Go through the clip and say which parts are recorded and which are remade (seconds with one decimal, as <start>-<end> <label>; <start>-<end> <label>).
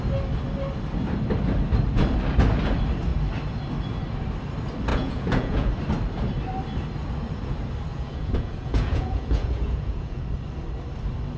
0.0-4.9 recorded; 4.9-5.7 remade; 5.7-7.9 recorded; 7.9-10.2 remade; 10.2-11.4 recorded